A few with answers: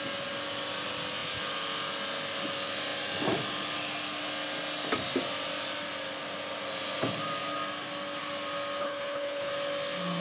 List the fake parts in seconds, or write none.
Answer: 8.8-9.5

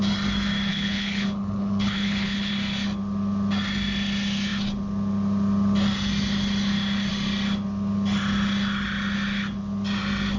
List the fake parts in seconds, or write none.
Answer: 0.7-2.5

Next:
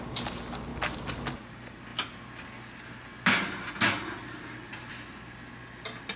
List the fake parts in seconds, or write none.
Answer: none

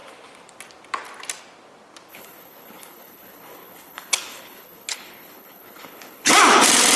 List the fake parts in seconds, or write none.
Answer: 2.1-6.3

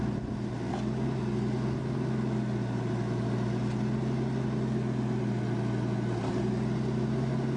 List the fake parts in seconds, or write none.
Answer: none

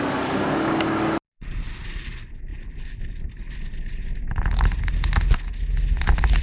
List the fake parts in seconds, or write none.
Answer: none

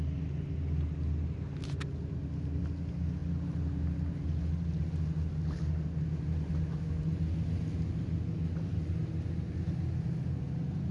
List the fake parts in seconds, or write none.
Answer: none